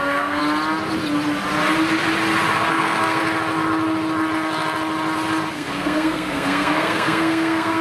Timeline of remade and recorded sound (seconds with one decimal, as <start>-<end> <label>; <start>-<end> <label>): 0.0-0.4 remade; 0.4-2.7 recorded; 2.7-3.2 remade; 3.2-5.5 recorded; 5.5-7.8 remade